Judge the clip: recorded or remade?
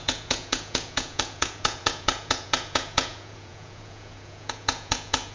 remade